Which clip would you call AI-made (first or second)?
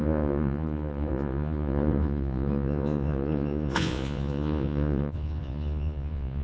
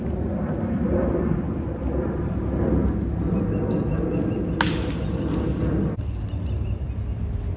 first